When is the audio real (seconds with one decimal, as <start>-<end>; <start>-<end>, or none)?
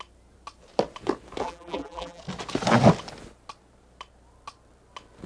0.0-1.4; 2.2-5.3